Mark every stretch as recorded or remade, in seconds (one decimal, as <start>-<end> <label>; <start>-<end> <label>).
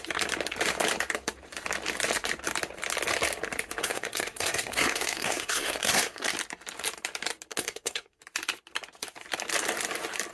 0.0-3.8 recorded; 3.8-6.3 remade; 6.3-7.5 recorded; 7.5-8.2 remade; 8.2-10.3 recorded